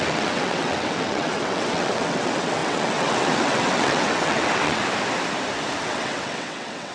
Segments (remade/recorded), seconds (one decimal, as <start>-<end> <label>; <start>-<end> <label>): 0.0-4.8 remade; 4.8-5.8 recorded; 5.8-6.9 remade

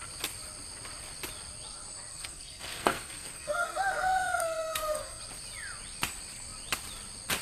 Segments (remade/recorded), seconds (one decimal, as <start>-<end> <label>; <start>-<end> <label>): 0.0-2.1 recorded; 2.1-5.2 remade; 5.2-7.4 recorded

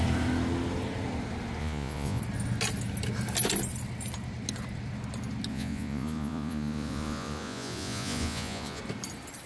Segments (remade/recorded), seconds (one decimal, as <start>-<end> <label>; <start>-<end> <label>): 0.0-1.6 recorded; 1.6-2.2 remade; 2.2-5.5 recorded; 5.5-8.8 remade; 8.8-9.5 recorded

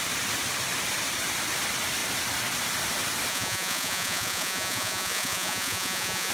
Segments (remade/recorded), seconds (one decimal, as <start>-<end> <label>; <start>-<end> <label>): 0.0-3.3 recorded; 3.3-6.3 remade